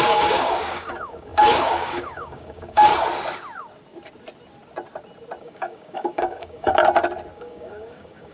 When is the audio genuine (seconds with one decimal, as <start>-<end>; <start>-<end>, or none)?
2.9-5.4; 6.7-7.3